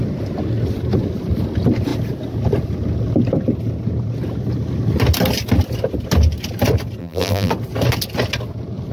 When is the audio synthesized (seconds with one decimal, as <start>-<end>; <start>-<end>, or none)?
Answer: 7.0-7.5